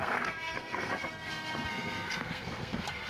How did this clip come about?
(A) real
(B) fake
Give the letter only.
B